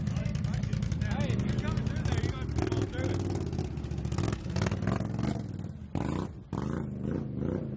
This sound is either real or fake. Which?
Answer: real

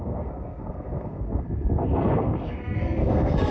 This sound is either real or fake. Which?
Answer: fake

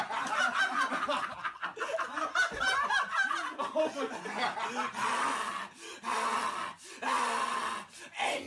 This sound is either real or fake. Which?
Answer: real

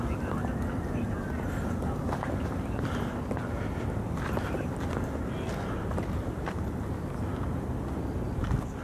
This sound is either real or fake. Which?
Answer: real